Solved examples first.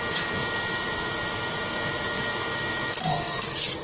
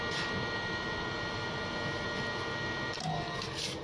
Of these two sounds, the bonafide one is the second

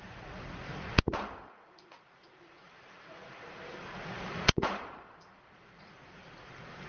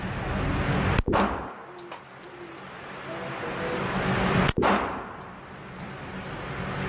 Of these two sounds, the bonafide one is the second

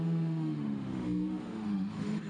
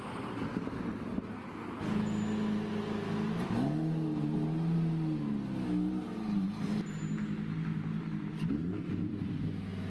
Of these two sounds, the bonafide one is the second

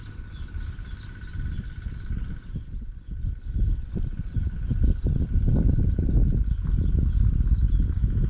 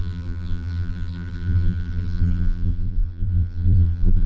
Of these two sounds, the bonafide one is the first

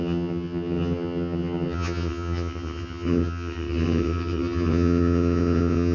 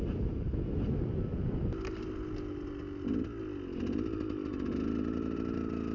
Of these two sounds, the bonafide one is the second